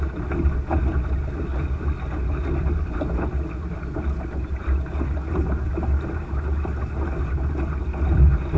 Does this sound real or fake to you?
real